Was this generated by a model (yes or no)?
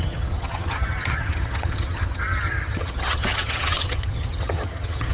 yes